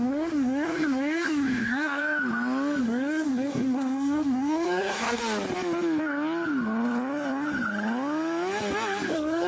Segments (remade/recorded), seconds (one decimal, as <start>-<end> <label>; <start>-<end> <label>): 0.0-2.0 remade; 2.0-2.8 recorded; 2.8-5.2 remade; 5.2-9.1 recorded; 9.1-9.5 remade